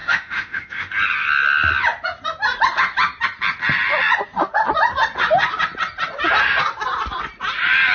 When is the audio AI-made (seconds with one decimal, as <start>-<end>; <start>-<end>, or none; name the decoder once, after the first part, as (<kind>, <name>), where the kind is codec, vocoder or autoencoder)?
0.0-0.9 (autoencoder, DAC-VAE)